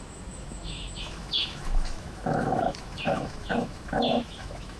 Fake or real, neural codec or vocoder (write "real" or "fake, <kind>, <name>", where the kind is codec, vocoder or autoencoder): fake, autoencoder, DAC-VAE